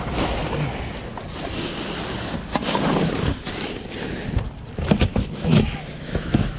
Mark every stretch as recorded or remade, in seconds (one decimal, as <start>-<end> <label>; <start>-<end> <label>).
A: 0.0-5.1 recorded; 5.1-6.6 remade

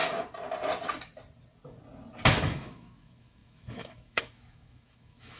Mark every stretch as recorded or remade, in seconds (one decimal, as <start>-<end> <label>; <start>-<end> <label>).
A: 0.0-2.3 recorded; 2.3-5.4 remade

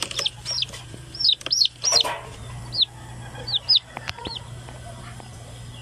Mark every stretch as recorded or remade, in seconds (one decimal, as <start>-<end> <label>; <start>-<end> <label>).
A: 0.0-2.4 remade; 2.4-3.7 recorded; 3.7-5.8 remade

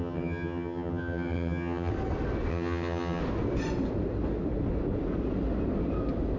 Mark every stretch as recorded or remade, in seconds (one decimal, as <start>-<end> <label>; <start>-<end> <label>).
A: 0.0-1.9 remade; 1.9-2.5 recorded; 2.5-3.2 remade; 3.2-6.4 recorded

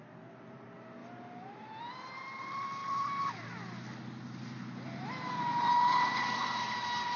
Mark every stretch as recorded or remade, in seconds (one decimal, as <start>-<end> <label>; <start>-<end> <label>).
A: 0.0-7.2 recorded

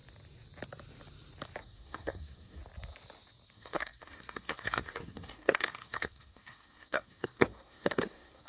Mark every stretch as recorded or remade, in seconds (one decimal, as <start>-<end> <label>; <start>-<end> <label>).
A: 0.0-1.6 recorded; 1.6-2.6 remade; 2.6-3.5 recorded; 3.5-8.5 remade